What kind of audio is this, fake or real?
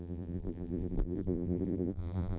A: fake